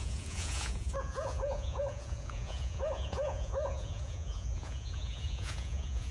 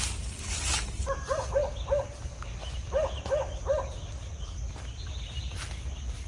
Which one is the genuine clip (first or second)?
second